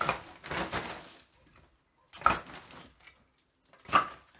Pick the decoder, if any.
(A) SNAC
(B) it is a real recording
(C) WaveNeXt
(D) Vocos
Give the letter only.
B